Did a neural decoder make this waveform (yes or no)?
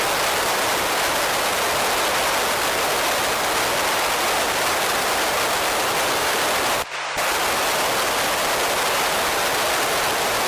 no